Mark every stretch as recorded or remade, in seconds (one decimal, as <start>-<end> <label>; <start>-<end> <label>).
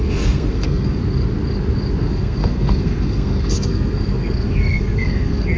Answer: 0.0-1.0 remade; 1.0-2.0 recorded; 2.0-5.6 remade